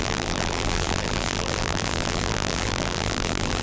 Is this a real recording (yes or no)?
no